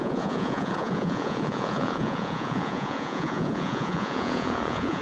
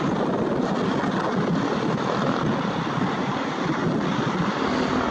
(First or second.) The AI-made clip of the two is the first